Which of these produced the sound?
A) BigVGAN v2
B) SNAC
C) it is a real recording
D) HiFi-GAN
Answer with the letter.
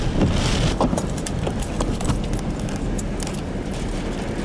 C